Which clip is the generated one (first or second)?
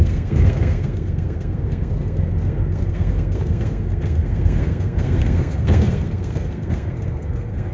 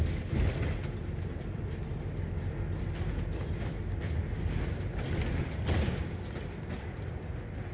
first